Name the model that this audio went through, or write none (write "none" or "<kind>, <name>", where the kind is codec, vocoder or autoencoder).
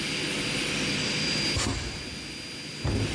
none